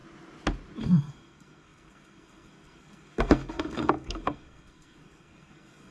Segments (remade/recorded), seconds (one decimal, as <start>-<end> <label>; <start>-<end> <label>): 0.0-0.8 recorded; 0.8-5.9 remade